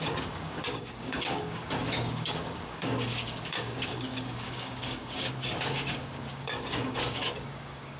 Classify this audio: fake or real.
fake